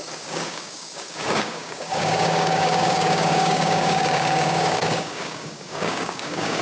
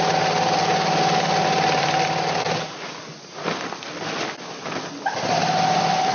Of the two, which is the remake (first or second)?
first